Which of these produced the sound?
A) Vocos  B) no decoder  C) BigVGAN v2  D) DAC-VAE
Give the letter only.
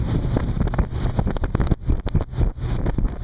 B